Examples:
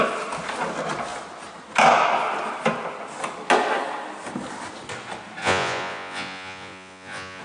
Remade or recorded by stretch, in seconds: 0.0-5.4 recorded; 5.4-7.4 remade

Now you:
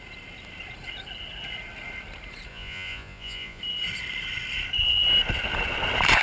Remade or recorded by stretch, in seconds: 0.0-2.5 recorded; 2.5-3.6 remade; 3.6-6.2 recorded